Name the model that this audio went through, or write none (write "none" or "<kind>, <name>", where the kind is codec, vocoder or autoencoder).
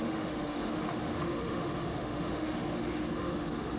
autoencoder, DAC-VAE